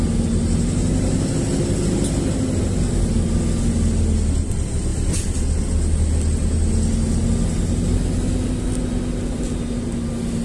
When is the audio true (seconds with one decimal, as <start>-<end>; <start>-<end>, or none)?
0.0-10.4